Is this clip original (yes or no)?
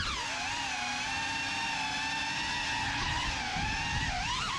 yes